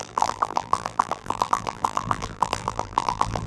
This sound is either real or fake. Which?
fake